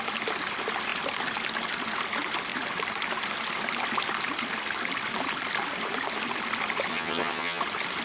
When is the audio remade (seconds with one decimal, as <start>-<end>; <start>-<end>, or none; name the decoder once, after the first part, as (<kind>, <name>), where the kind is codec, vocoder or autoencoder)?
6.9-7.6 (vocoder, HiFi-GAN)